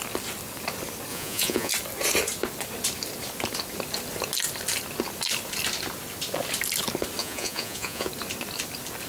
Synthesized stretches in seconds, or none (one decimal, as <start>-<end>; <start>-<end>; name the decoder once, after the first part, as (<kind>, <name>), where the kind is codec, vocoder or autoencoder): 1.1-1.7 (vocoder, Vocos); 7.2-8.1